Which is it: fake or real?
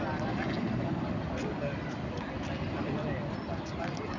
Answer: real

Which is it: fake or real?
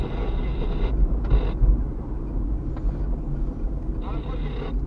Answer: real